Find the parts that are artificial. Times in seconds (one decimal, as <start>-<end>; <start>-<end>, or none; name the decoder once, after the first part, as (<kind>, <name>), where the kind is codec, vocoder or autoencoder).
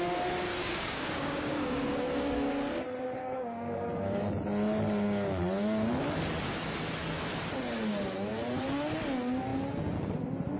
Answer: 0.5-2.5 (codec, DAC); 3.2-4.2